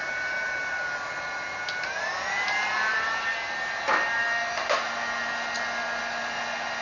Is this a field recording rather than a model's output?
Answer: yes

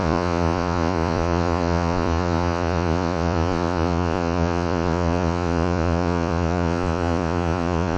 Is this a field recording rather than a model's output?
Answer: no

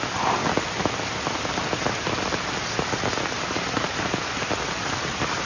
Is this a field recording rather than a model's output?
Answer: yes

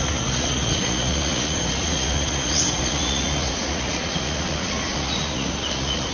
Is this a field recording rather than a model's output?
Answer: no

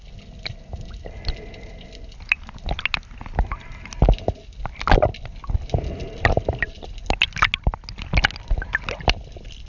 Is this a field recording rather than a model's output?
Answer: yes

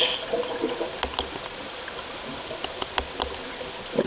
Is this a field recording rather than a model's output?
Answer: yes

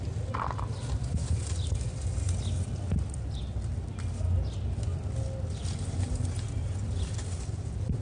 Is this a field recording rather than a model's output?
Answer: yes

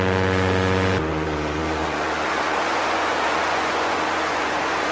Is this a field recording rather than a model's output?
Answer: no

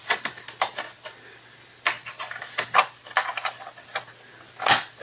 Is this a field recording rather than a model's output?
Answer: yes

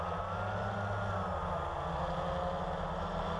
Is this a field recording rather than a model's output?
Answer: yes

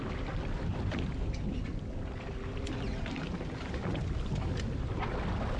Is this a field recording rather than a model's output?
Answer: yes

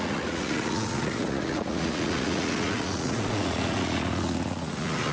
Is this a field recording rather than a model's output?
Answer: no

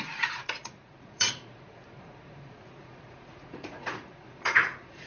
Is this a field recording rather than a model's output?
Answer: no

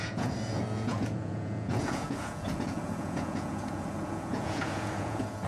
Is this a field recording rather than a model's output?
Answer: no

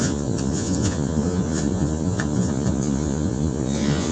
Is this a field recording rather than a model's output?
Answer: no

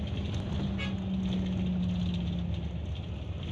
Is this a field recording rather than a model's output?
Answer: yes